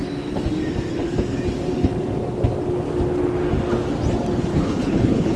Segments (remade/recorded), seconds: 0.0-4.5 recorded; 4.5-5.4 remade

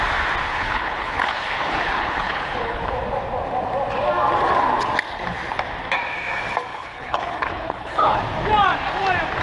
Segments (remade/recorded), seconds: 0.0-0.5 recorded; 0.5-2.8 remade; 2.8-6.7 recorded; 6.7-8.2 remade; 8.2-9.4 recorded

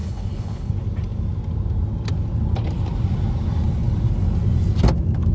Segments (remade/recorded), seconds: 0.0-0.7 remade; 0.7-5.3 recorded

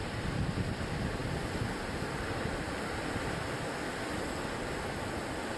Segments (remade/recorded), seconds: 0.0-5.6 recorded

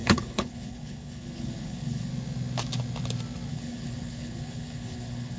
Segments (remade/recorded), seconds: 0.0-2.1 remade; 2.1-3.5 recorded; 3.5-5.4 remade

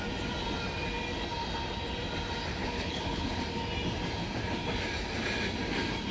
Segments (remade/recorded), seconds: 0.0-2.6 recorded; 2.6-3.4 remade; 3.4-6.1 recorded

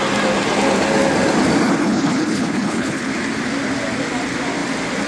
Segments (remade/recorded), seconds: 0.0-1.8 recorded; 1.8-3.1 remade; 3.1-5.1 recorded

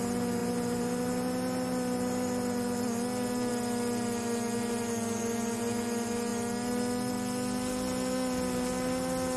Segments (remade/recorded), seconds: 0.0-9.4 recorded